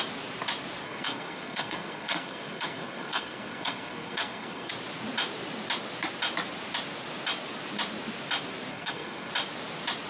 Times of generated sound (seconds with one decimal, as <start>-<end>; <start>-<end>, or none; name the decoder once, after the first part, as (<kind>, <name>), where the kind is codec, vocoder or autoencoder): 0.8-4.7 (codec, SNAC); 8.7-9.3